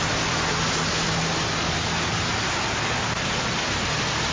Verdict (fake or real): real